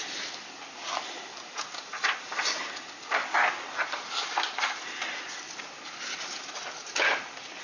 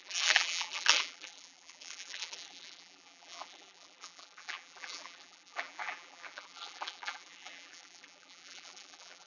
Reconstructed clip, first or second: second